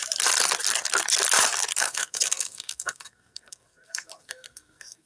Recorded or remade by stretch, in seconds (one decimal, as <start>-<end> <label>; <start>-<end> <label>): 0.0-1.8 recorded; 1.8-5.1 remade